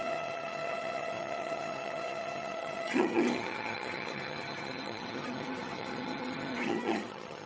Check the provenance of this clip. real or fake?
fake